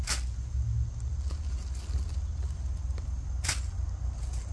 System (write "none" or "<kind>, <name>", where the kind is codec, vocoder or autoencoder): none